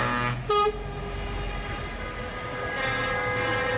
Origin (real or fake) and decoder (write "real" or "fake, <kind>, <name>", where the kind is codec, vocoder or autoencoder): real